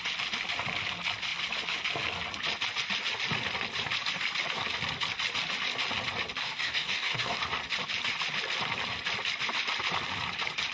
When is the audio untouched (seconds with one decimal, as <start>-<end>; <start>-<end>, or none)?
0.0-6.4; 7.4-10.7